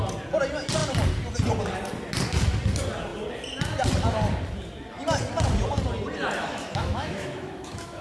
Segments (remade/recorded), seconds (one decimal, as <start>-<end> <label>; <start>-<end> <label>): 0.0-6.4 recorded; 6.4-8.0 remade